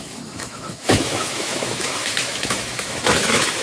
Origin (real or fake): fake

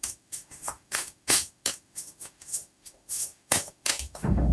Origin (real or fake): fake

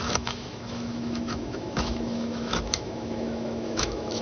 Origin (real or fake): fake